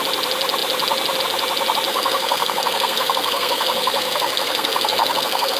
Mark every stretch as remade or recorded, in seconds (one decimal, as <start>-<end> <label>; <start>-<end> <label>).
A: 0.0-1.9 recorded; 1.9-5.6 remade